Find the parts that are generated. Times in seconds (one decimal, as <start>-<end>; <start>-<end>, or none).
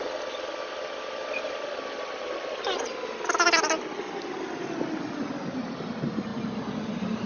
none